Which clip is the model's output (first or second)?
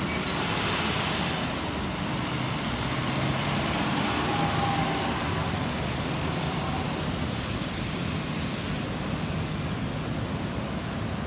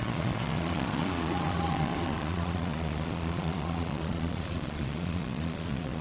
second